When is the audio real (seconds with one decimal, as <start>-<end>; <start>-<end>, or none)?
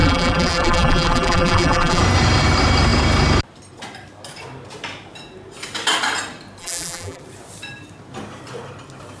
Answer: 2.0-6.6; 7.2-9.2